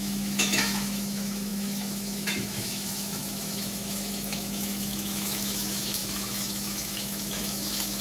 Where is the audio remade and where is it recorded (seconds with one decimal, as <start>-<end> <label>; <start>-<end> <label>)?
0.0-8.0 remade